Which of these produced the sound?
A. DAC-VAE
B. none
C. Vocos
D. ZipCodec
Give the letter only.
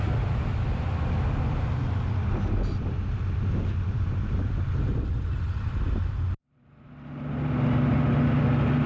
B